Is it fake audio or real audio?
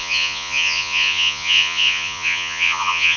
fake